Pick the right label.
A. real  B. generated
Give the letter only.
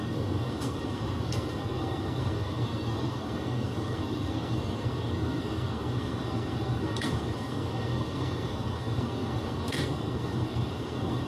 B